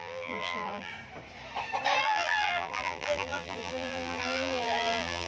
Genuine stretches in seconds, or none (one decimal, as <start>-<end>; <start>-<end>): 0.9-2.0